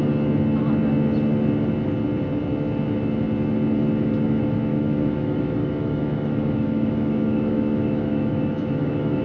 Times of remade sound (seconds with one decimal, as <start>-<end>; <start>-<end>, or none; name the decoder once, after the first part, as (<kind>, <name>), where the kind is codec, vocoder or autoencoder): 4.7-9.2 (autoencoder, DAC-VAE)